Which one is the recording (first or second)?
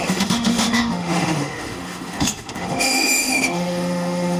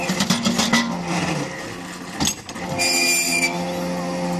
second